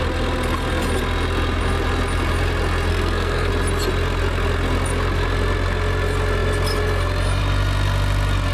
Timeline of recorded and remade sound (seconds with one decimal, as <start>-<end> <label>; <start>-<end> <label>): 0.0-2.9 recorded; 2.9-3.5 remade; 3.5-8.5 recorded